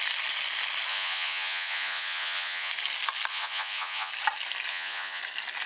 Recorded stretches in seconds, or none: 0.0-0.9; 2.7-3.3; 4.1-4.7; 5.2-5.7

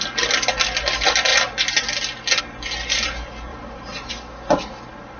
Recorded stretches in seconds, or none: 0.0-3.5; 4.1-5.2

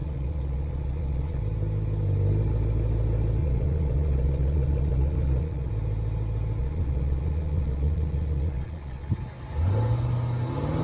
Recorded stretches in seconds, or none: 1.4-3.4; 5.7-6.6; 9.1-10.8

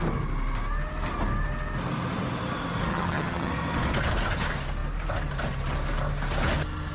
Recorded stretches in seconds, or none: 0.0-2.9; 3.5-6.9

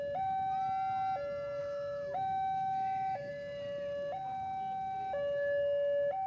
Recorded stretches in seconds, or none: 0.0-1.6; 3.3-6.3

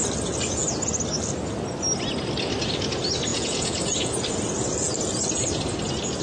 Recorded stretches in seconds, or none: 0.0-3.3; 4.1-6.2

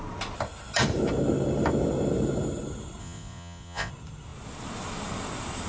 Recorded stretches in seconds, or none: 0.0-3.0; 3.9-5.7

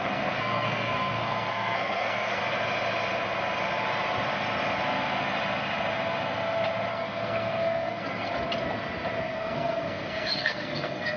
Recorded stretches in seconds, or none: 2.4-6.9; 8.3-9.2